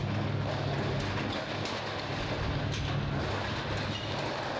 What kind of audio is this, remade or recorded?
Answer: recorded